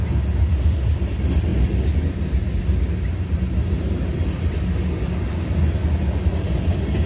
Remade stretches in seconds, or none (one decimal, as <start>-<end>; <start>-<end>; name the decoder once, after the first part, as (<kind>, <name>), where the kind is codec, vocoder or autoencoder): none